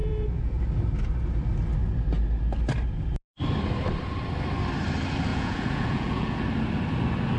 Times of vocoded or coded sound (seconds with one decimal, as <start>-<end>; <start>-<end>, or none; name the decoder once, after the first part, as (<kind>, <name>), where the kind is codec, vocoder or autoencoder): 0.0-0.6 (vocoder, Vocos); 5.3-6.4